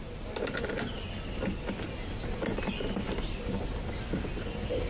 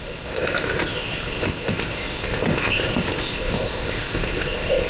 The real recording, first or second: first